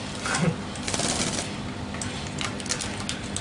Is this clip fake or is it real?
real